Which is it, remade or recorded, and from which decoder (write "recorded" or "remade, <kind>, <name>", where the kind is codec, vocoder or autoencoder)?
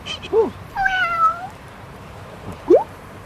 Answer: remade, vocoder, BigVGAN v2